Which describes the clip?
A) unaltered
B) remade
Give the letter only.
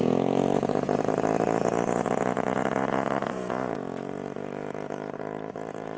B